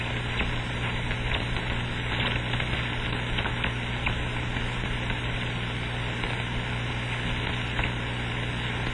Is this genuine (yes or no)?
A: yes